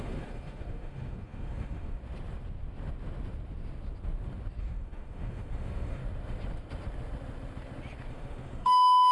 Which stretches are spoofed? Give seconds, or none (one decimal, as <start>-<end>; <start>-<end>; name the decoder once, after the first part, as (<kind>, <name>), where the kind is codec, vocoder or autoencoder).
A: 0.0-2.0 (autoencoder, DAC-VAE); 4.6-6.0; 8.1-9.1